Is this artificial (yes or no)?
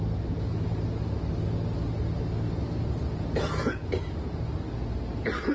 no